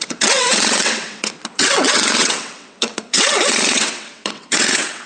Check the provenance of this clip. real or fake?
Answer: fake